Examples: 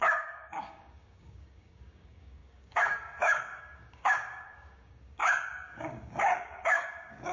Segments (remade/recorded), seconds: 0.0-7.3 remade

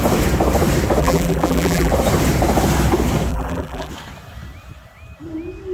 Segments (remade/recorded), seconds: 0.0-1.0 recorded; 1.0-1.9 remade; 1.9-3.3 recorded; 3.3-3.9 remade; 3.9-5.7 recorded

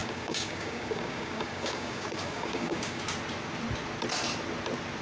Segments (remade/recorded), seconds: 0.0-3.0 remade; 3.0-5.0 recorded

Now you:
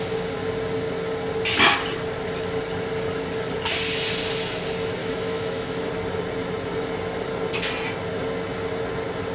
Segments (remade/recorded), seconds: 0.0-5.0 recorded; 5.0-5.9 remade; 5.9-9.3 recorded